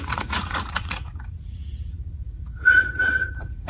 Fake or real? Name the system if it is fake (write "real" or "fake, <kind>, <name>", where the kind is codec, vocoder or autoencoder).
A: fake, vocoder, Vocos